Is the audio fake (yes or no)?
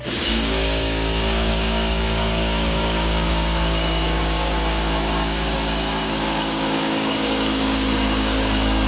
yes